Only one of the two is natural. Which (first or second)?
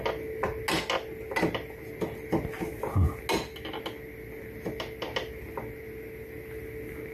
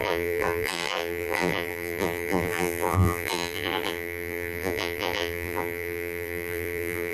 first